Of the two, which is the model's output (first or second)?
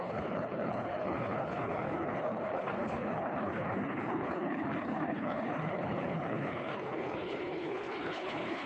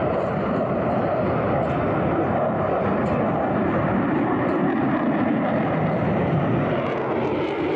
first